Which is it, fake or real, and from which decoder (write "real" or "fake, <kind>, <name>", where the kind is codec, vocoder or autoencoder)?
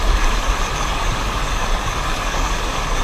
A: fake, codec, DAC